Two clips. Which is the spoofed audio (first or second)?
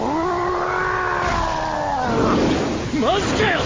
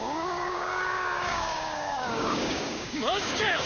second